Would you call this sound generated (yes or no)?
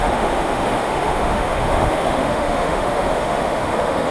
yes